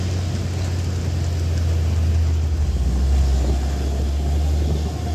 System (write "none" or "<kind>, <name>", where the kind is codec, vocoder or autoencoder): none